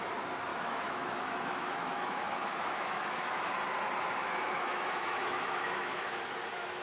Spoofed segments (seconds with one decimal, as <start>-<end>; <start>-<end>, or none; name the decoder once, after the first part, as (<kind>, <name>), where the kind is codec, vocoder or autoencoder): 0.5-3.5 (autoencoder, DAC-VAE); 4.2-6.2